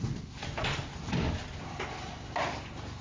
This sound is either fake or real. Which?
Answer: real